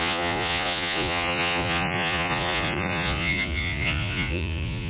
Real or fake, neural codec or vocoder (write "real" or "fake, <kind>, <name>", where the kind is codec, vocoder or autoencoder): fake, vocoder, Vocos